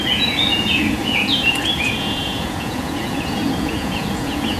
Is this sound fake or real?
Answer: fake